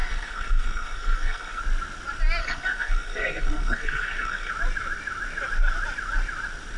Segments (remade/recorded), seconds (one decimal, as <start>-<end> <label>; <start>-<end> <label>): 0.0-1.6 remade; 1.6-2.4 recorded; 2.4-4.5 remade; 4.5-6.8 recorded